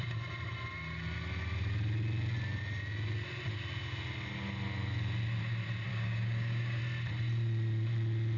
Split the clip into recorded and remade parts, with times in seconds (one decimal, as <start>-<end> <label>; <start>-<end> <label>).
0.0-5.9 recorded; 5.9-6.8 remade; 6.8-8.4 recorded